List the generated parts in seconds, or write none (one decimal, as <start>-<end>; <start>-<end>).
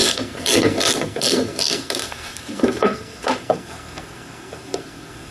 0.0-5.3